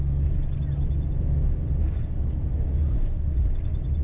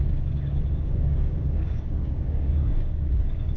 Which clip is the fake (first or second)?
second